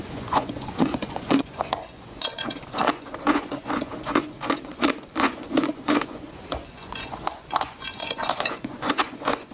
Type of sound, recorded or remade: remade